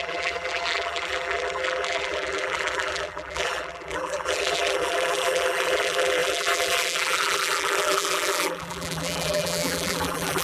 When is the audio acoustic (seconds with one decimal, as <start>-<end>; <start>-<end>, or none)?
none